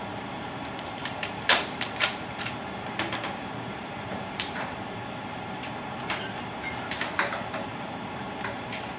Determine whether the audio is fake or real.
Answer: fake